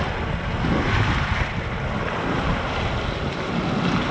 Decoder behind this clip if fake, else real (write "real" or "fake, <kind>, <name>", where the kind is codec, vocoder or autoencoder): real